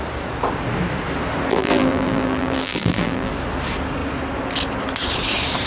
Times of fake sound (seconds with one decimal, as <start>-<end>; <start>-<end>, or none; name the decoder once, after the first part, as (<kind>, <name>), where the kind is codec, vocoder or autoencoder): 1.5-3.3 (vocoder, BigVGAN v2)